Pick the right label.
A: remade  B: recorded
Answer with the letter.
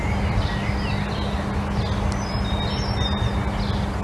B